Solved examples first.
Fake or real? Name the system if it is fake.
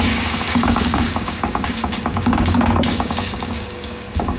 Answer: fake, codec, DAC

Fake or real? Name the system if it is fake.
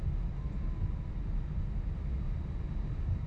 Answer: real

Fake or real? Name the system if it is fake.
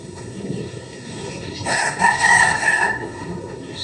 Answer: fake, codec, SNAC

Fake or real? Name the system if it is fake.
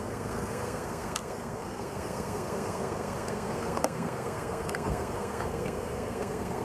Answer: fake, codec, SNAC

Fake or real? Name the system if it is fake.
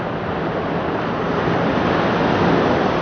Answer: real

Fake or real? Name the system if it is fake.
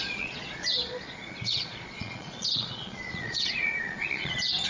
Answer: fake, vocoder, Vocos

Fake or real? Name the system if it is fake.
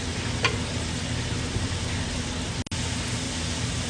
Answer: real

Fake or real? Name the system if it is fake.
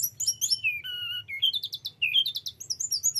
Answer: real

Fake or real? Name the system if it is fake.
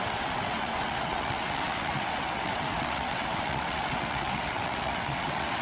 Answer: fake, vocoder, WaveNeXt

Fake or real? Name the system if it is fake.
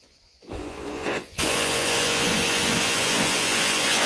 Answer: fake, vocoder, Vocos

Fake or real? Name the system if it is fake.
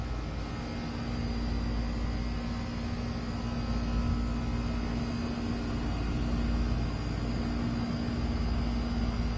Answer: real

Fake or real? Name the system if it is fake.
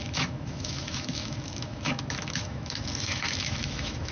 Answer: fake, autoencoder, DAC-VAE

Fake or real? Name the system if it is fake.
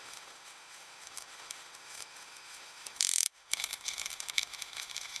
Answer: fake, autoencoder, DAC-VAE